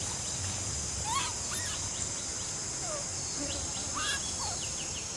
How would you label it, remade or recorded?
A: recorded